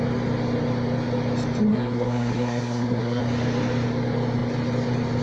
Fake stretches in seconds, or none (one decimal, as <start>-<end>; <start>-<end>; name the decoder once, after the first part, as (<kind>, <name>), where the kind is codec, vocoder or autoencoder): 1.7-3.2 (codec, SNAC)